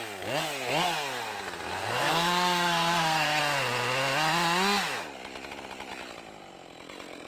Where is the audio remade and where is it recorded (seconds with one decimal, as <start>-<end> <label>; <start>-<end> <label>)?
0.0-1.8 recorded; 1.8-3.4 remade; 3.4-7.3 recorded